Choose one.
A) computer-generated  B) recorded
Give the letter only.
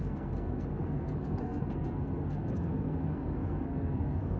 A